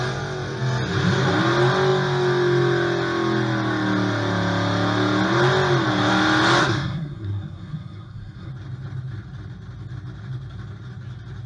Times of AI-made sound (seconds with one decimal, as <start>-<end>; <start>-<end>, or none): 6.6-8.5